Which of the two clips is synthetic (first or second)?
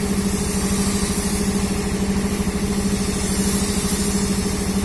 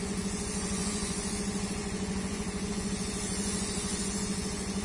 second